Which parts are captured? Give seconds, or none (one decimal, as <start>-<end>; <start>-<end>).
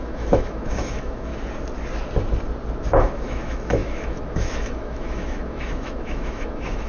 1.3-2.9